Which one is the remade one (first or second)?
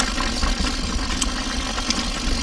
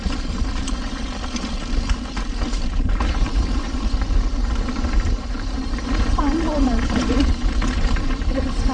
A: second